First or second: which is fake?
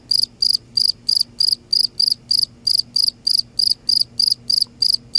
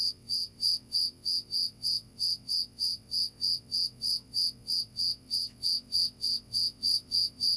second